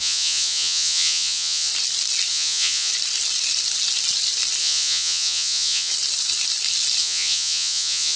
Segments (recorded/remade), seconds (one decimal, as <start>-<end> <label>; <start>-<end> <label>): 0.0-1.7 remade; 1.7-2.3 recorded; 2.3-2.9 remade; 2.9-4.6 recorded; 4.6-5.9 remade; 5.9-7.0 recorded; 7.0-8.2 remade